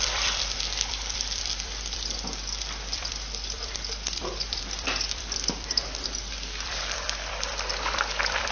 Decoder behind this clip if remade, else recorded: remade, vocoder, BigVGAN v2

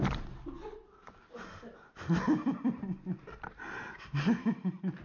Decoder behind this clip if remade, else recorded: recorded